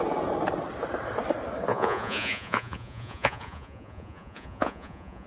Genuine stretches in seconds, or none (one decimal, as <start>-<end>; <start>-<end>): 0.0-1.7